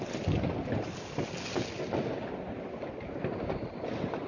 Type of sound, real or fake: real